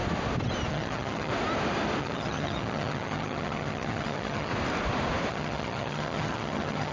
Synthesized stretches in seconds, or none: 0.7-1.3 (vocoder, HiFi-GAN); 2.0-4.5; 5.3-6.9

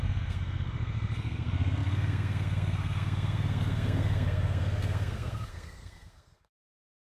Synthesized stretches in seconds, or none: 0.0-7.1 (codec, SNAC)

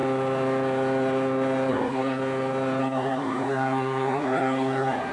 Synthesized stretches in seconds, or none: 1.7-2.2 (codec, SNAC); 2.8-5.1

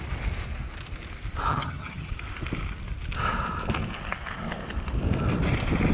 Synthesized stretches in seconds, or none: 1.5-2.1 (vocoder, HiFi-GAN)

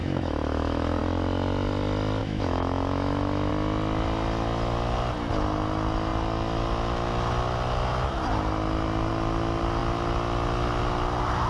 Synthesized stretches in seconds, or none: 0.0-1.0 (autoencoder, DAC-VAE); 2.2-3.5